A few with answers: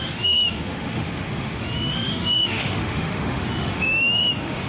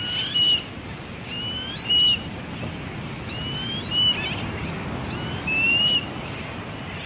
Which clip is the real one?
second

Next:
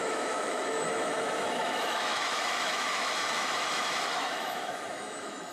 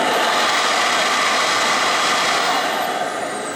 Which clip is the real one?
second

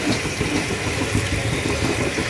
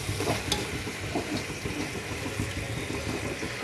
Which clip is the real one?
second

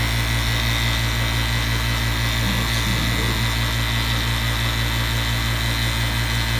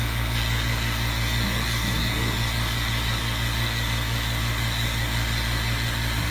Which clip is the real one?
first